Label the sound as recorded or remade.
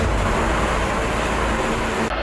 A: recorded